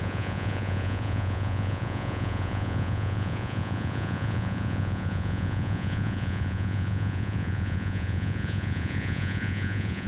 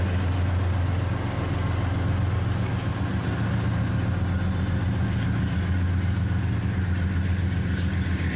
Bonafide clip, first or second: second